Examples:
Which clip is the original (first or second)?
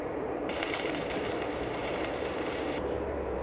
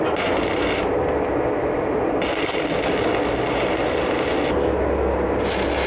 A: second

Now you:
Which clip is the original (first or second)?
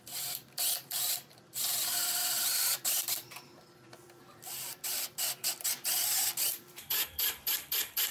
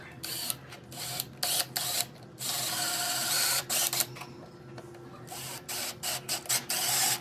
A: second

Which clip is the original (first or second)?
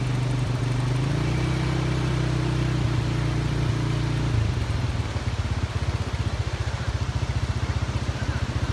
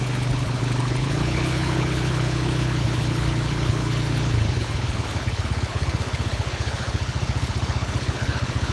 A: first